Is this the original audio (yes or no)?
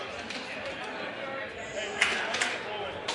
yes